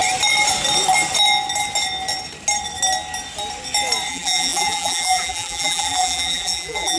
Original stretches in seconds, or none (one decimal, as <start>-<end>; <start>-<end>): 0.0-4.1